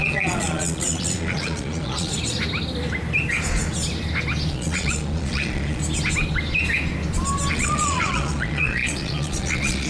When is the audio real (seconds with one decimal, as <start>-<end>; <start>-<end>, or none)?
2.1-4.5; 5.8-7.5